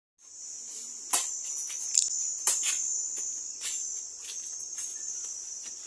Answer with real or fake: real